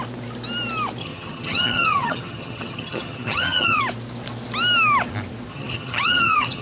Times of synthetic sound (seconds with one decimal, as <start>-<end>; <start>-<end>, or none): 1.0-3.8; 5.5-6.6